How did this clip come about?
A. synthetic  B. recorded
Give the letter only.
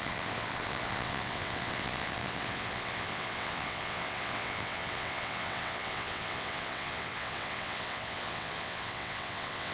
A